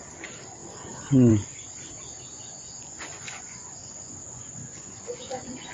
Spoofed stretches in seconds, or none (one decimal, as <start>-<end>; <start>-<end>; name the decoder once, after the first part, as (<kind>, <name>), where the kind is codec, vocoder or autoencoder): 2.3-5.7 (vocoder, Vocos)

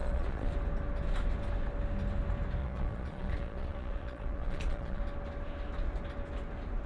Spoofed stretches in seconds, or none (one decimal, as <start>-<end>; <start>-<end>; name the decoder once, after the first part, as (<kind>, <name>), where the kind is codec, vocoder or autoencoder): 0.0-0.5 (vocoder, Vocos); 2.6-5.0

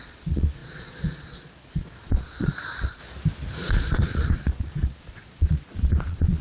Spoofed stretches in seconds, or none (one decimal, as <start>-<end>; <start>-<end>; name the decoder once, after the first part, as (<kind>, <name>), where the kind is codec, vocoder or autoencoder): 0.0-3.0 (vocoder, Vocos); 3.7-6.4

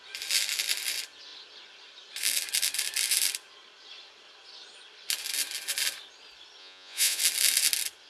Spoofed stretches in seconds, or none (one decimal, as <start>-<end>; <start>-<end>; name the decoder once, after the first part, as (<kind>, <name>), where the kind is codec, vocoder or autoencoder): 6.6-7.2 (vocoder, Vocos)

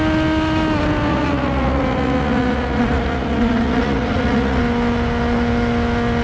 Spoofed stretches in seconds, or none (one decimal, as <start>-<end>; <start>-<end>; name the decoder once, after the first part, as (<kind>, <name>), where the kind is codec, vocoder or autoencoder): 1.1-4.6 (vocoder, Vocos)